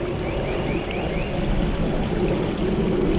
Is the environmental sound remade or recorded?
recorded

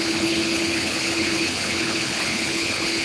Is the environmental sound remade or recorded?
remade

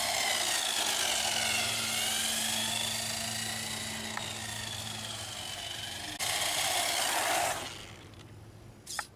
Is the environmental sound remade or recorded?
recorded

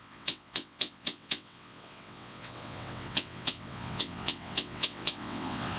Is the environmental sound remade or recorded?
remade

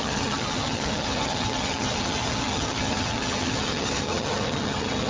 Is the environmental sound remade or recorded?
remade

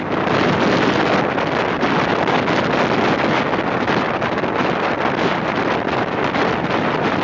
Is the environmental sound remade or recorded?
recorded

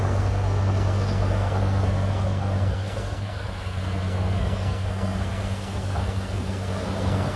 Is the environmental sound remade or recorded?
remade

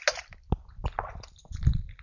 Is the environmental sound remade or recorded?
recorded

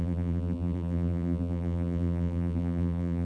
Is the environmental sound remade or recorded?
remade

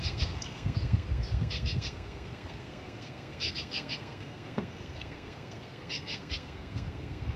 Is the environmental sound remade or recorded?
remade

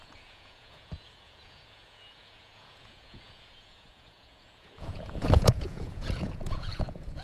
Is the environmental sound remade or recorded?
remade